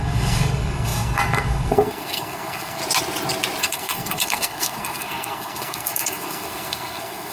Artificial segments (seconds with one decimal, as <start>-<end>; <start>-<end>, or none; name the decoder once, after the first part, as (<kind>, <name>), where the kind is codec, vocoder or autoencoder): 0.0-2.8 (codec, SNAC); 3.6-7.3

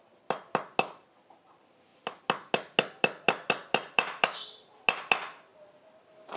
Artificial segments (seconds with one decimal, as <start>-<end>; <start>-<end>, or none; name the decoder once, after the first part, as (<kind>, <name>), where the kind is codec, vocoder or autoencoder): none

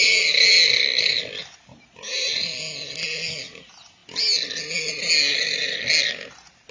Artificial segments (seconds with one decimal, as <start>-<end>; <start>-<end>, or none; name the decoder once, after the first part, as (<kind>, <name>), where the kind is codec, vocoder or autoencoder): none

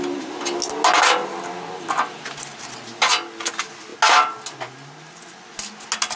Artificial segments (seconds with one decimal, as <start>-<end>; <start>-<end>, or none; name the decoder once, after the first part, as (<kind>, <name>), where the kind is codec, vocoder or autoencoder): none

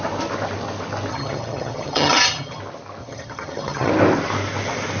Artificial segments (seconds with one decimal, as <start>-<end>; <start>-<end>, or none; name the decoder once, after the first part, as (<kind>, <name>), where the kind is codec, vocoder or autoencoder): 1.1-2.6 (vocoder, HiFi-GAN); 3.0-3.9